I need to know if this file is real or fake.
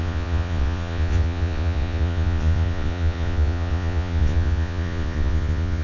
fake